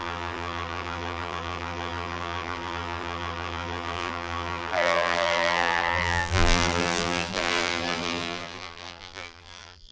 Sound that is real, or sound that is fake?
fake